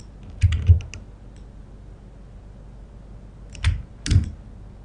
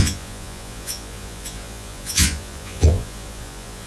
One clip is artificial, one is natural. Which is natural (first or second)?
first